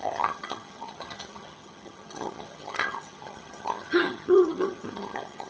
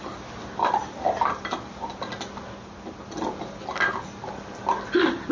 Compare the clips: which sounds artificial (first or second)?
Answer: first